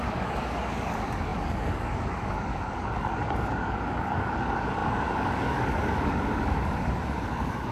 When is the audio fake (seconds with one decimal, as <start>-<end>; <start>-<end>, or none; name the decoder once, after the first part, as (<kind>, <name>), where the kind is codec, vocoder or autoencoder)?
0.0-7.7 (codec, DAC)